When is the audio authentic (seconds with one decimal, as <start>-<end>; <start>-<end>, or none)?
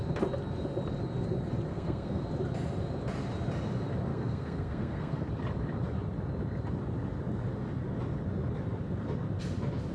0.0-1.7; 2.2-4.1; 5.3-9.9